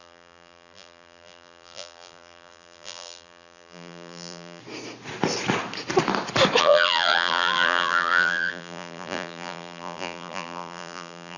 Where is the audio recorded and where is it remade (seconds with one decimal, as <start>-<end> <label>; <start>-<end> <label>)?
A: 0.0-4.6 remade; 4.6-6.6 recorded; 6.6-11.4 remade